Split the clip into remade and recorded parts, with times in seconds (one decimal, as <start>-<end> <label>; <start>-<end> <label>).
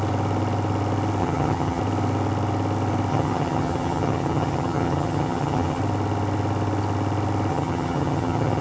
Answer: 0.0-1.2 recorded; 1.2-1.8 remade; 1.8-3.1 recorded; 3.1-5.8 remade; 5.8-7.5 recorded; 7.5-8.6 remade